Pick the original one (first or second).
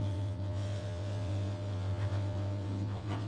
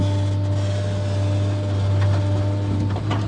second